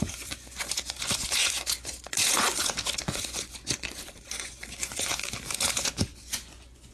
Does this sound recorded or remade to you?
remade